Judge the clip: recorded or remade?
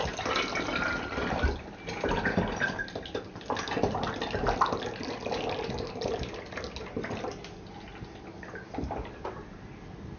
recorded